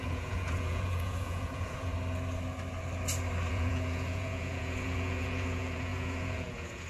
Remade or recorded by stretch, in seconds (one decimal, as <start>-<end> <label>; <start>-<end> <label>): 0.0-1.9 remade; 1.9-3.5 recorded; 3.5-6.9 remade